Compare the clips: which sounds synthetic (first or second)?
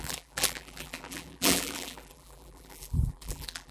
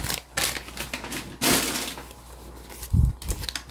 first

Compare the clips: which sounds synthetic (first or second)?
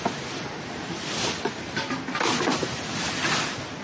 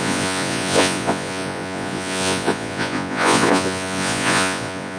second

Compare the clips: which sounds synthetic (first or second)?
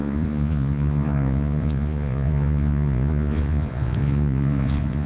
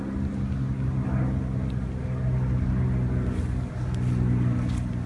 first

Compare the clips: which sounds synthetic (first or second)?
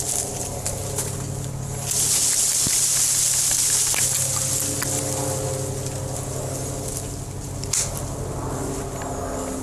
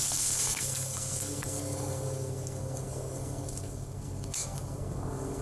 second